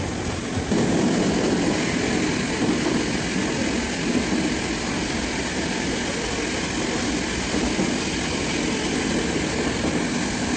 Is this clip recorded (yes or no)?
yes